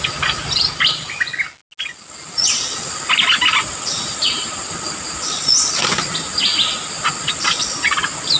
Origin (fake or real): real